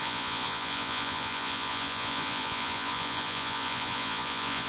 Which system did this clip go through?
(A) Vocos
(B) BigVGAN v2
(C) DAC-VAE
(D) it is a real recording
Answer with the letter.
A